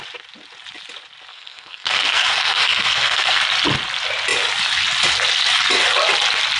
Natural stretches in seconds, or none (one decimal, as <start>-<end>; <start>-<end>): 0.0-1.3; 3.4-6.6